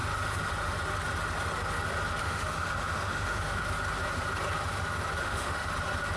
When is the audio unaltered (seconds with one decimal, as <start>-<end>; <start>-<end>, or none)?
0.0-2.2; 3.6-5.2; 5.7-6.2